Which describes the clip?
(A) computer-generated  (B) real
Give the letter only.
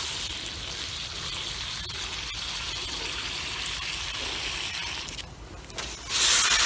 B